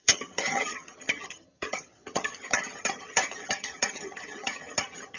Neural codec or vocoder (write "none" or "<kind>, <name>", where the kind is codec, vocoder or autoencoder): vocoder, HiFi-GAN